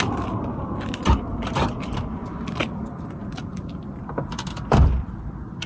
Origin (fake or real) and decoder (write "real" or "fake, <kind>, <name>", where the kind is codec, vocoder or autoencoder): fake, vocoder, BigVGAN v2